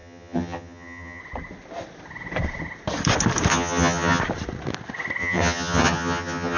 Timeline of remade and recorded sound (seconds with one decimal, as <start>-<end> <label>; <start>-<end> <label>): 0.0-1.2 remade; 1.2-3.5 recorded; 3.5-4.2 remade; 4.2-5.2 recorded; 5.2-6.6 remade